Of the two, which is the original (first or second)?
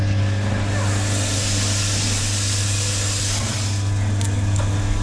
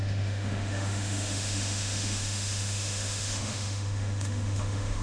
first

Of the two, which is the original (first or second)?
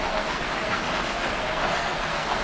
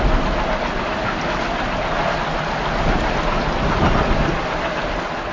second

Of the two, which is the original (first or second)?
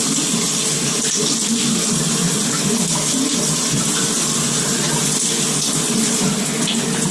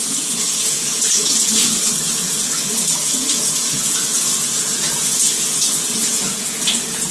first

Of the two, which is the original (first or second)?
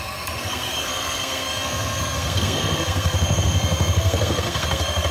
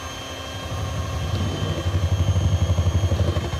second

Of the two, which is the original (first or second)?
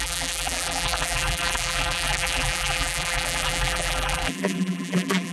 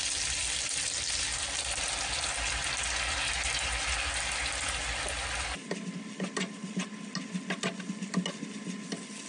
second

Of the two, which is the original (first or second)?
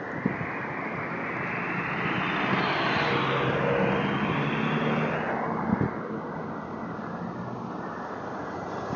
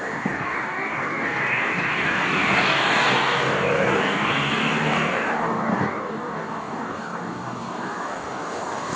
first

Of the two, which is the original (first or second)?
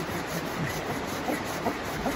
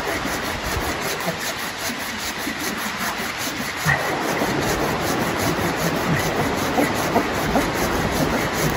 second